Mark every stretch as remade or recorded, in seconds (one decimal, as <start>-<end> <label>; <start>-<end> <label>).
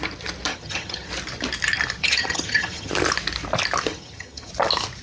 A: 0.0-0.5 recorded; 0.5-1.1 remade; 1.1-2.0 recorded; 2.0-2.9 remade; 2.9-3.9 recorded; 3.9-4.5 remade; 4.5-5.0 recorded